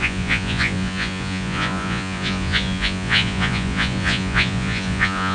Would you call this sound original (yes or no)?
no